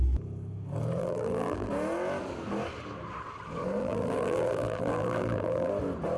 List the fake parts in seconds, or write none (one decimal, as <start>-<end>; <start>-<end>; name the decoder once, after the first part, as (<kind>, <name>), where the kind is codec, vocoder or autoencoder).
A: 1.0-1.7 (vocoder, BigVGAN v2); 3.8-5.7